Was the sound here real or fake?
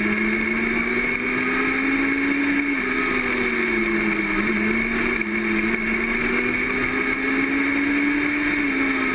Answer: real